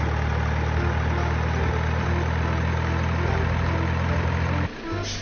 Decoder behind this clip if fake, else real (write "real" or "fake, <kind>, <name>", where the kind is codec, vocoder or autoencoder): real